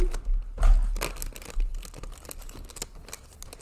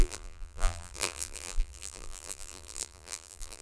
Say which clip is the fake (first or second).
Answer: second